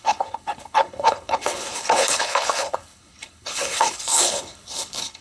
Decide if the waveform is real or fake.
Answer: fake